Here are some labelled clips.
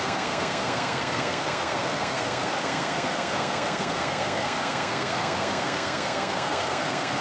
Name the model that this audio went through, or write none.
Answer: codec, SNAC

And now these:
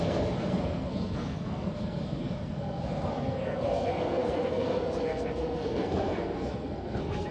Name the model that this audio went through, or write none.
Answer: codec, SNAC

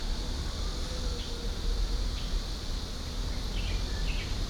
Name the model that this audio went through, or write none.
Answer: none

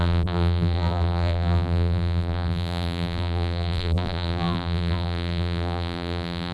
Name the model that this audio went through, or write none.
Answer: vocoder, BigVGAN v2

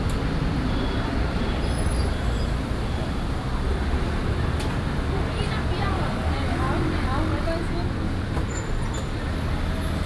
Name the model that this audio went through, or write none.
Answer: none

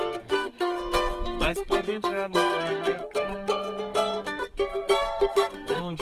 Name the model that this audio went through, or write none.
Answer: codec, SNAC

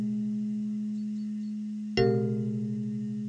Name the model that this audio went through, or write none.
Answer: none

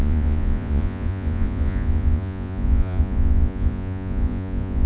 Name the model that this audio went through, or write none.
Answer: vocoder, Vocos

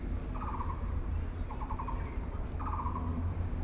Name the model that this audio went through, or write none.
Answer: none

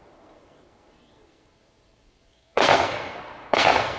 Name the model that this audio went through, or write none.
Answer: codec, SNAC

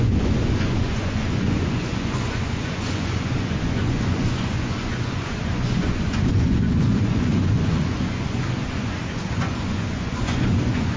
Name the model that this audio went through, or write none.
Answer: vocoder, Vocos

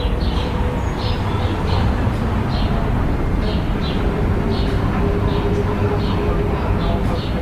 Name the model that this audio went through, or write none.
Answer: none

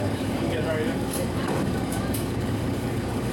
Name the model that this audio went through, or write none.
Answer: codec, DAC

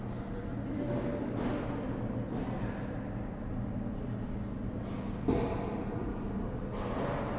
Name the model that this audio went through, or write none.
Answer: none